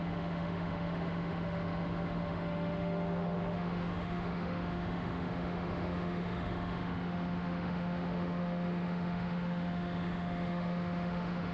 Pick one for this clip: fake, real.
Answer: fake